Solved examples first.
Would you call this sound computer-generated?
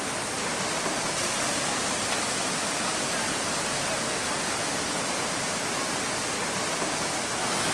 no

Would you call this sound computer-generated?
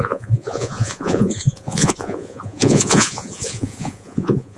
yes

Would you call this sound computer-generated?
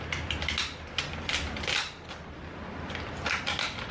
no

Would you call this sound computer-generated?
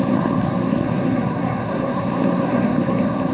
yes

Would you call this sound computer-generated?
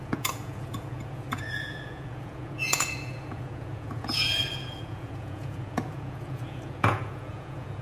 yes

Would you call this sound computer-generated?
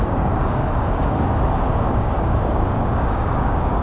yes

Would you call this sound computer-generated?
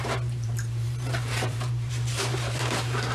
yes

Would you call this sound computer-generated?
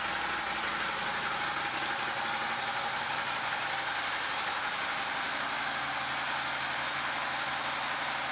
no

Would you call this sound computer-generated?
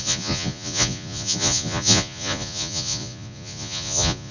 yes